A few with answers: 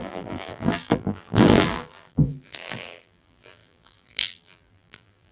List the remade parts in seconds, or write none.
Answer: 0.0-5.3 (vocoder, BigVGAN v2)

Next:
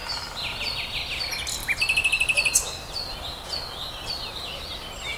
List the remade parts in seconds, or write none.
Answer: 1.2-5.2 (vocoder, BigVGAN v2)

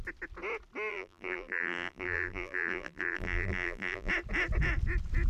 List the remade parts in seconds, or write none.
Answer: 0.9-4.1 (vocoder, BigVGAN v2)